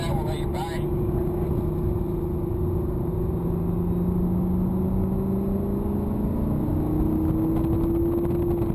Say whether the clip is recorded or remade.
recorded